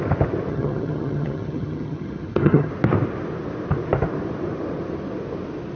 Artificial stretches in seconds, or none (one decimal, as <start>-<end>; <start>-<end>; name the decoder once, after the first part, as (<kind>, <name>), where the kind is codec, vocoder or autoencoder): 0.5-2.7 (vocoder, HiFi-GAN)